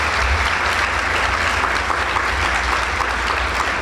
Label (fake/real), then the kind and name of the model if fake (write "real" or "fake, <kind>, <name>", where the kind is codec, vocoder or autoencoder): real